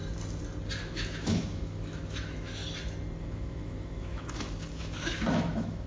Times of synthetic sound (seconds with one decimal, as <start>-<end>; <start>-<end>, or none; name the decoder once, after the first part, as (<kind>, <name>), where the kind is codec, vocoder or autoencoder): 0.8-2.6 (autoencoder, DAC-VAE); 3.2-5.9